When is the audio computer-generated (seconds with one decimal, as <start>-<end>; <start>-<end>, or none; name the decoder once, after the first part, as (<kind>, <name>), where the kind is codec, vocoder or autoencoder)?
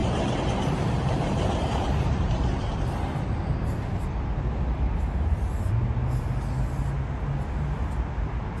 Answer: 0.0-2.7 (vocoder, BigVGAN v2)